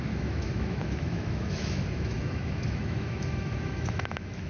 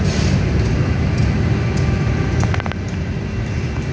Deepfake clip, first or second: first